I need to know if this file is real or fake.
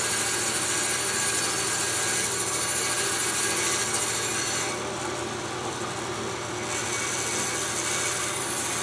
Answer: real